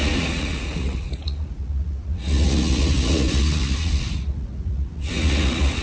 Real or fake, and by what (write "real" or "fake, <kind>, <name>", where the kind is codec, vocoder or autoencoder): fake, vocoder, Vocos